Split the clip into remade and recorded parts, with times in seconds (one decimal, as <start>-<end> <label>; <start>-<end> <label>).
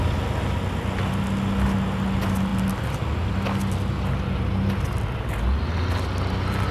0.0-6.7 recorded